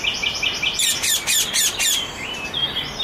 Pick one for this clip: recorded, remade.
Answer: recorded